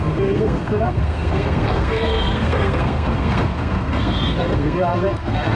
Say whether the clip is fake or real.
fake